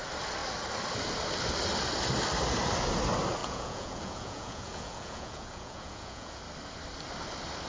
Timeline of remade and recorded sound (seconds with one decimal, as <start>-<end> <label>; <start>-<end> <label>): 0.0-3.4 recorded; 3.4-6.4 remade; 6.4-7.7 recorded